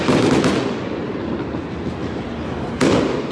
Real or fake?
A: real